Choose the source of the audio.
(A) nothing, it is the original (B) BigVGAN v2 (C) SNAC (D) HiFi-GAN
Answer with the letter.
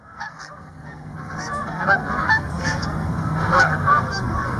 C